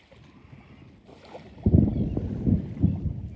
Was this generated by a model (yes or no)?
no